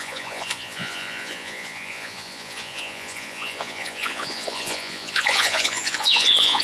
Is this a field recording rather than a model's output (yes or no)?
no